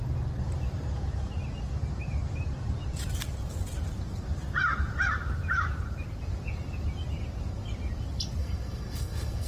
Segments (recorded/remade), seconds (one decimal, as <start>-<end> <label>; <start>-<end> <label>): 0.0-8.4 recorded; 8.4-9.5 remade